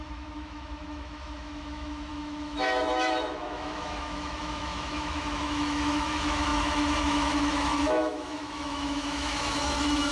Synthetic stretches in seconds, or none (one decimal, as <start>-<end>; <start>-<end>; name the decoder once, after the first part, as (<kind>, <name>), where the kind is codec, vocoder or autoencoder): 0.0-10.1 (autoencoder, DAC-VAE)